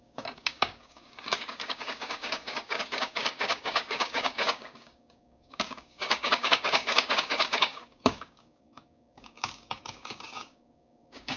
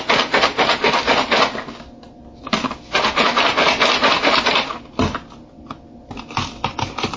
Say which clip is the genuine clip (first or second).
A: second